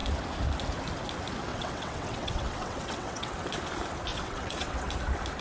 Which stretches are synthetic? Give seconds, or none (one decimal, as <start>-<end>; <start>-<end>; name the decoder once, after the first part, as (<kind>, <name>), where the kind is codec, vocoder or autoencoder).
1.5-3.3 (vocoder, WaveNeXt); 4.1-4.9